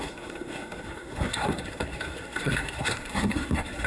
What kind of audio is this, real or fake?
fake